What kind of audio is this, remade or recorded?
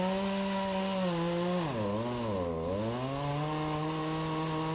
recorded